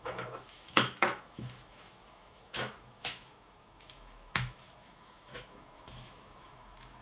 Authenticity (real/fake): fake